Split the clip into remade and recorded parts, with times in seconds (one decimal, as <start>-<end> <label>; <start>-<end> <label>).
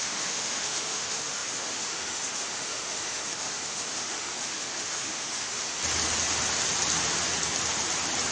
0.0-5.8 remade; 5.8-8.3 recorded